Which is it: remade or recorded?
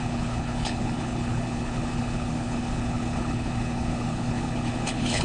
remade